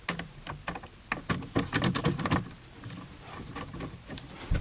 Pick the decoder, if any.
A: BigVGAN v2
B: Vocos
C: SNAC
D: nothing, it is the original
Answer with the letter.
D